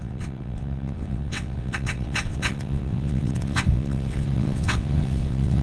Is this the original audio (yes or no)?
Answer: no